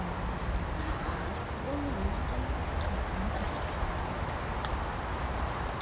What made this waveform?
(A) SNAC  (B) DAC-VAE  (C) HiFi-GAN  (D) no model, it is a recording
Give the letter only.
D